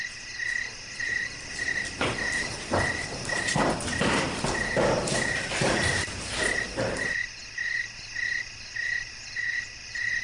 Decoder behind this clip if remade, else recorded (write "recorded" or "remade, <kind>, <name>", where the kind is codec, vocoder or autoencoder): recorded